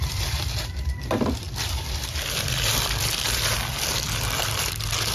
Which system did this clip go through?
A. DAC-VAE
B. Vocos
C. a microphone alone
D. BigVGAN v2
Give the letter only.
D